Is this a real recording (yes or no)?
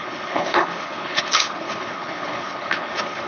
no